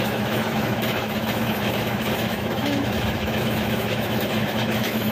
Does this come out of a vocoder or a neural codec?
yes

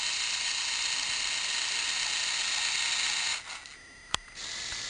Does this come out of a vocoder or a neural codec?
no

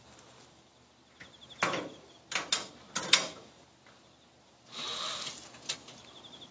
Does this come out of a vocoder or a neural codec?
no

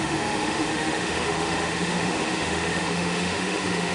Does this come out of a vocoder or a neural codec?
yes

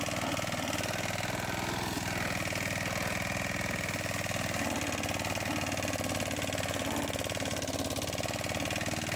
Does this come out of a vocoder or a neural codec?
no